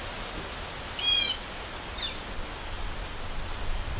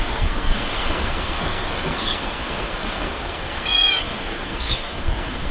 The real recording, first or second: first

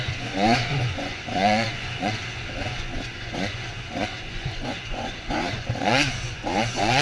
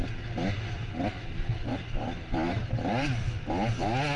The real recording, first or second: second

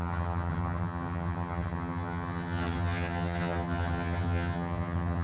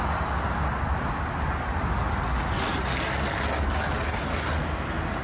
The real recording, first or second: second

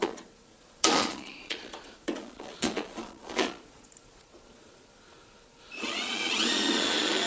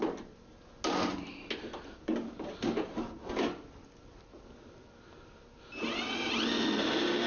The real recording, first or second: second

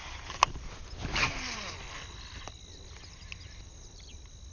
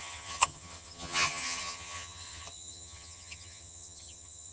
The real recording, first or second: first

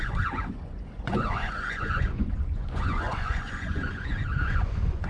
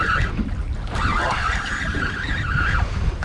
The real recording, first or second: second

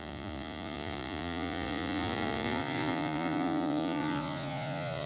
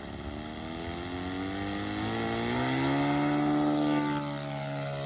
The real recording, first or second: second